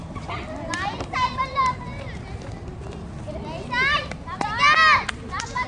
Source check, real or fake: real